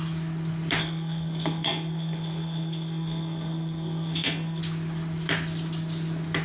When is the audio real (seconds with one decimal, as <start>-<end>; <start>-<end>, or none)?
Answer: 0.0-0.8; 4.6-6.4